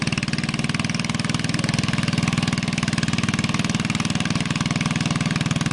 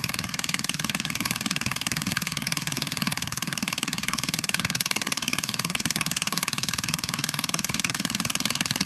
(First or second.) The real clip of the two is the first